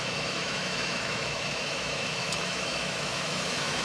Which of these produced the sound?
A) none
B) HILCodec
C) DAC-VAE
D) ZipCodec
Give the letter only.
C